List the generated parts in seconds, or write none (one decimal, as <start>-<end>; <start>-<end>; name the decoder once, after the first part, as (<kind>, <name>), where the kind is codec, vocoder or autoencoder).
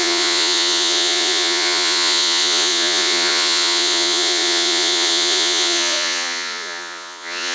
0.0-7.5 (vocoder, Vocos)